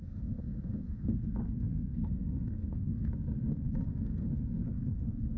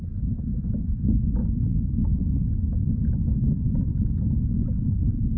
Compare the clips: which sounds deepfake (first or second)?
first